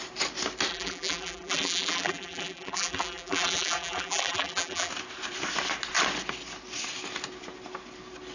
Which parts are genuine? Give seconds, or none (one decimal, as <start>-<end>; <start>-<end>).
0.0-0.7; 4.9-8.3

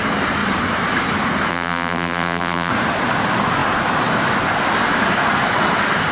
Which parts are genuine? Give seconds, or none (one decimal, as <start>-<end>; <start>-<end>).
0.0-1.5; 2.7-6.1

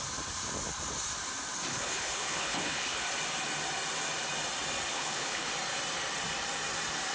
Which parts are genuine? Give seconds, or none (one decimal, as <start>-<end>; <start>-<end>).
0.0-1.7; 3.0-4.9; 5.5-7.1

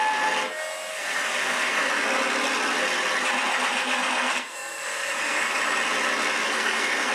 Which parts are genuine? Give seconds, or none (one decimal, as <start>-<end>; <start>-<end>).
0.0-0.9; 1.9-3.5; 5.6-6.4